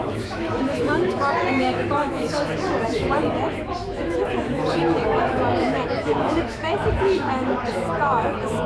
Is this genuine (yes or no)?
no